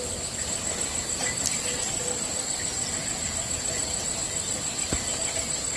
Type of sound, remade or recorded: recorded